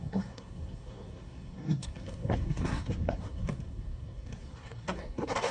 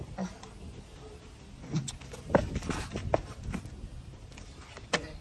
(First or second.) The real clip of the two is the second